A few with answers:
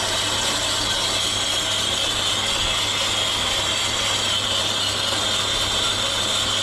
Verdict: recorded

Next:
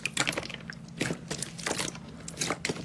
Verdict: recorded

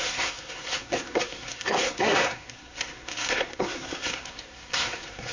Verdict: remade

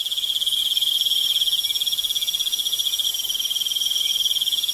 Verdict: recorded